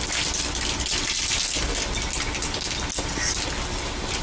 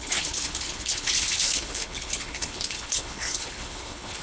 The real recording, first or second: first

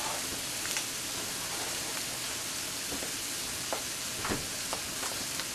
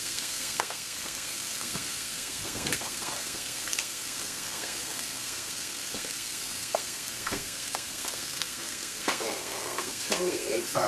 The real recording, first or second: first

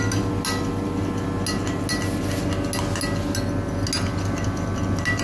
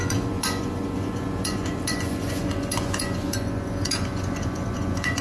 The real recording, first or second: first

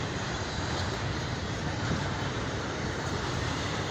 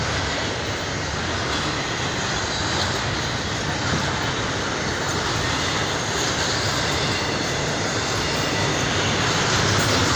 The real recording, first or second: second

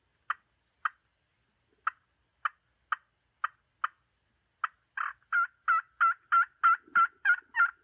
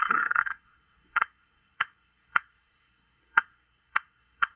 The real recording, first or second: first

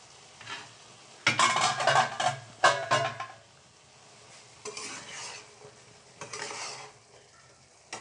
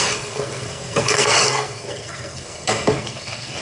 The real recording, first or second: first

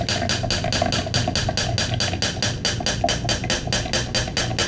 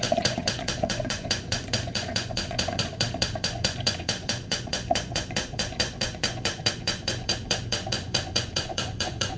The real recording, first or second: first